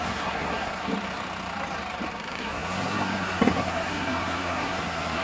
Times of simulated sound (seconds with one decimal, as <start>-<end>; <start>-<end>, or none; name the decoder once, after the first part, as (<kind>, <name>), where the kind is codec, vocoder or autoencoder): 0.0-0.9 (codec, SNAC); 2.1-5.2